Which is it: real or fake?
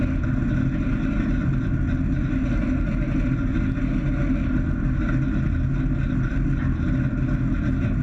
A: real